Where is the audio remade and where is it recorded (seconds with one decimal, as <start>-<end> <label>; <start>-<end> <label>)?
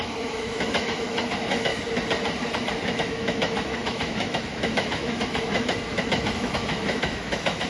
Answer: 0.0-1.7 remade; 1.7-2.9 recorded; 2.9-7.7 remade